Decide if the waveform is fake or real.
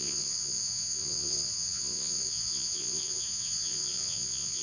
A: fake